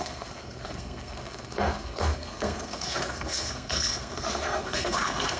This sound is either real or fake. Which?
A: fake